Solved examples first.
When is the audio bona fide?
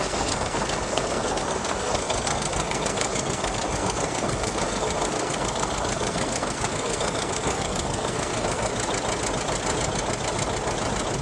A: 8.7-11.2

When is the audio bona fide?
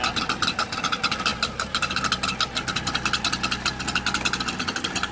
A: 0.0-5.1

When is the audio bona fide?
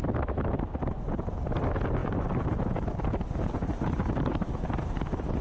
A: 0.0-0.8; 1.4-2.0